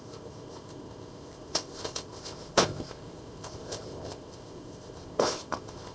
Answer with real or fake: fake